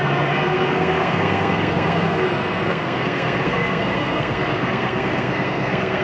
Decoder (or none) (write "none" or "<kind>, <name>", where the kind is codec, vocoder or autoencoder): codec, SNAC